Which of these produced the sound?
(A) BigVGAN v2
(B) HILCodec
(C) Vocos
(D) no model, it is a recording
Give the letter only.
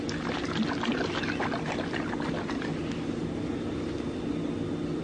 D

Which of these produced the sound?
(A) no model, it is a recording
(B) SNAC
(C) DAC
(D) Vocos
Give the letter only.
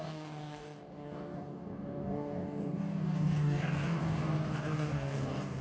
C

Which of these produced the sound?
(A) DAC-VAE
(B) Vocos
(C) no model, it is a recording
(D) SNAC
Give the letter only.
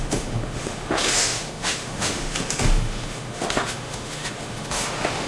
A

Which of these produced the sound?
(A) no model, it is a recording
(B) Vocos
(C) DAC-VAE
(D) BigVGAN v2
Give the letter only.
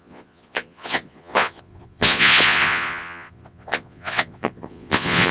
B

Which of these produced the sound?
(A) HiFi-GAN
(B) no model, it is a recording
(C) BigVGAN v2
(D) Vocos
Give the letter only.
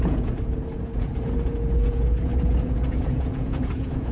D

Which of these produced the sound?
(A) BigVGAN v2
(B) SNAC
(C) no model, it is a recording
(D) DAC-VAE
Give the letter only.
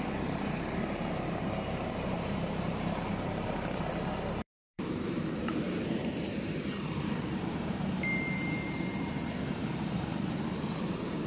A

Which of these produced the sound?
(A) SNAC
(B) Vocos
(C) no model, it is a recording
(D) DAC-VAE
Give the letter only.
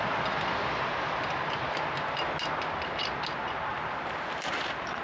C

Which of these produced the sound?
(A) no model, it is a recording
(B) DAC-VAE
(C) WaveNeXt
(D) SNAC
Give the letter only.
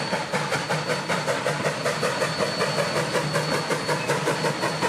A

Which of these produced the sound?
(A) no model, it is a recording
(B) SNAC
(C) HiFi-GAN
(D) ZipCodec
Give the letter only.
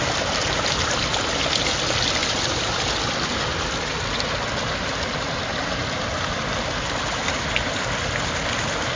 A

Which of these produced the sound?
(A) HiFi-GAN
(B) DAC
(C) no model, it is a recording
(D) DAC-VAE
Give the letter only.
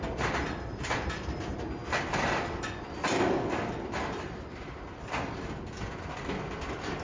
C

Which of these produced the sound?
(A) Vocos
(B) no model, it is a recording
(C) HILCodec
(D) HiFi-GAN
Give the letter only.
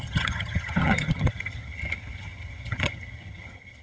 D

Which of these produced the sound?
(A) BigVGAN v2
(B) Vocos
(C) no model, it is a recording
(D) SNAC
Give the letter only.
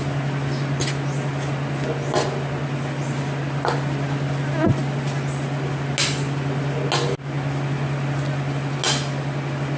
C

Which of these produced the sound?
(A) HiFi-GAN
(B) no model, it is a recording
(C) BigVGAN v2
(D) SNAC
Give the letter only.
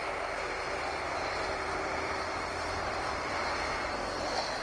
B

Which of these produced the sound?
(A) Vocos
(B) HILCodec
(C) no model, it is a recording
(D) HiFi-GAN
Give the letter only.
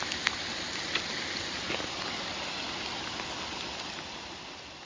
C